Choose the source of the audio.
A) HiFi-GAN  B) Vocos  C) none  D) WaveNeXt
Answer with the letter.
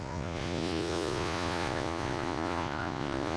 B